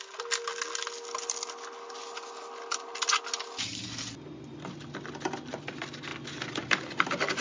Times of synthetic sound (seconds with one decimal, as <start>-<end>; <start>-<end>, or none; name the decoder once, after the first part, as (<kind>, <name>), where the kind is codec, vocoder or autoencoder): none